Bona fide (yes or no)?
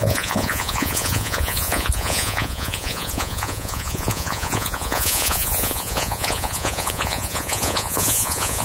no